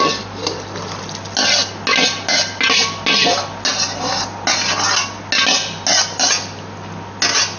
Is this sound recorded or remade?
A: recorded